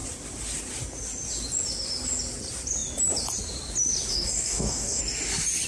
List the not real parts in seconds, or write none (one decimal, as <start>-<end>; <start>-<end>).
4.1-5.0